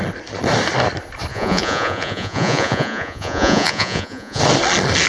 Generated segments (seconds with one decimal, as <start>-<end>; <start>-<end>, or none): 1.3-4.4